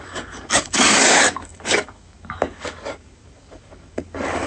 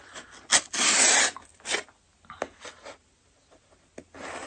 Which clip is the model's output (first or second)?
first